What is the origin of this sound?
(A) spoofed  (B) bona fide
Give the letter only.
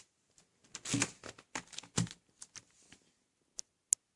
B